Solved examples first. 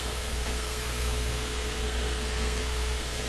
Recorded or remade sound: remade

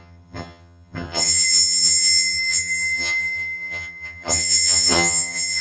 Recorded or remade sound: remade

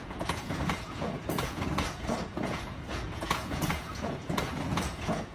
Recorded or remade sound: remade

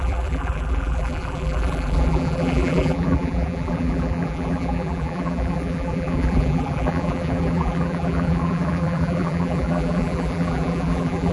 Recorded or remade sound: remade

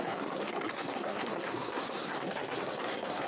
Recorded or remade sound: remade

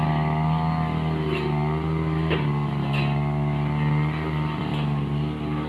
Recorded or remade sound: recorded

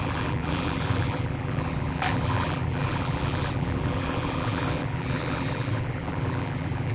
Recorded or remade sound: remade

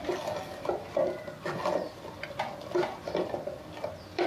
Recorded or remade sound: recorded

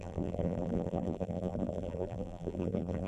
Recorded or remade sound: remade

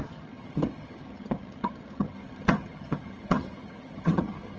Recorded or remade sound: remade